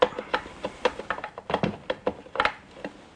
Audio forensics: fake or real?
real